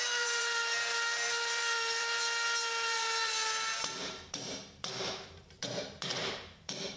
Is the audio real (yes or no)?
no